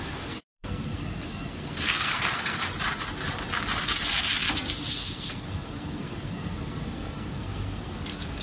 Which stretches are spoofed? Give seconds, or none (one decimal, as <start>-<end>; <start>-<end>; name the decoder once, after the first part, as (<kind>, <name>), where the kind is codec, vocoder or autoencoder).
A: 0.0-2.6 (codec, SNAC); 4.9-8.4